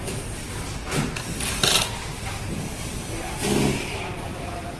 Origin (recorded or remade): recorded